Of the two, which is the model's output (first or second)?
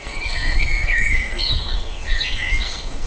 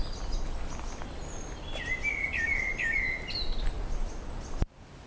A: first